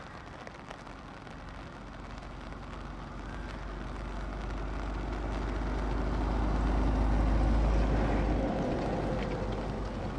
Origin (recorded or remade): recorded